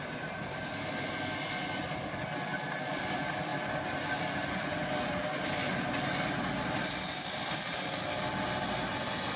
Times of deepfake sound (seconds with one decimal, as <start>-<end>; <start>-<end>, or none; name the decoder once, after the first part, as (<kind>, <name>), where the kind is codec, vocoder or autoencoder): none